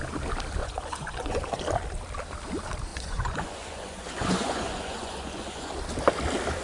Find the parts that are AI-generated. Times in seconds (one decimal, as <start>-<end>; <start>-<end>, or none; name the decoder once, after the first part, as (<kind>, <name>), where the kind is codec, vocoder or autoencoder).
0.6-1.6 (vocoder, Vocos); 2.9-5.7